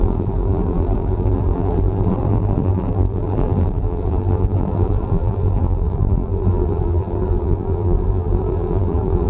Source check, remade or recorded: remade